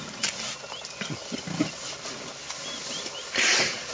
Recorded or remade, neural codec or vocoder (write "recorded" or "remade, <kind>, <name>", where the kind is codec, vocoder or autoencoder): recorded